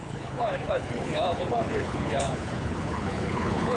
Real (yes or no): no